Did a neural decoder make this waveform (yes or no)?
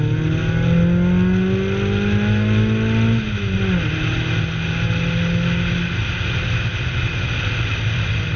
no